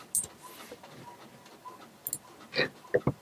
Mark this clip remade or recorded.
recorded